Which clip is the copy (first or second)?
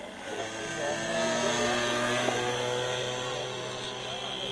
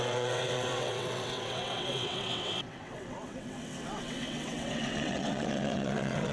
second